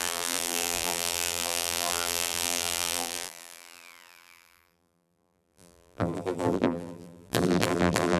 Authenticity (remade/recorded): remade